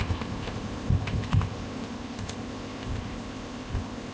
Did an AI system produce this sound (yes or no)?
yes